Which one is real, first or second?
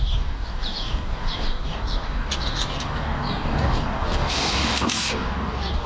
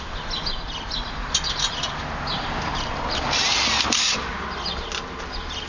second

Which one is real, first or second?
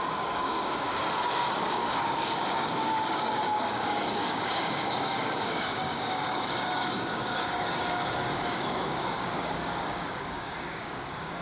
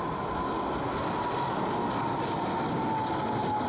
second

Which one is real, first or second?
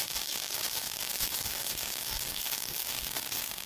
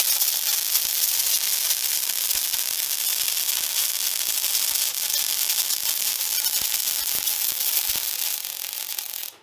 second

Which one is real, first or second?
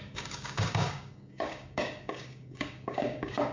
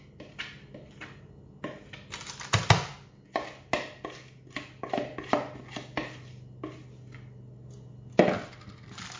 second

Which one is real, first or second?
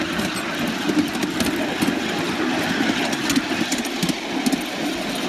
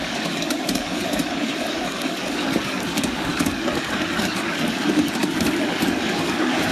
first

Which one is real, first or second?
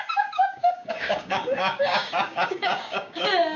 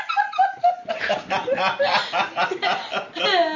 second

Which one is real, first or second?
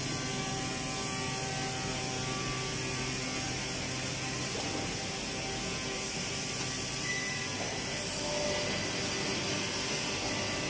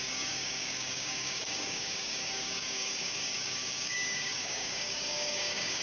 first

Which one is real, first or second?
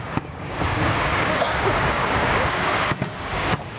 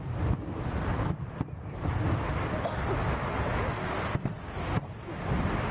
second